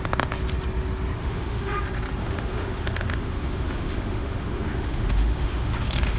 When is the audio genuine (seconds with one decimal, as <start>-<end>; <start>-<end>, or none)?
0.0-1.2; 1.8-2.2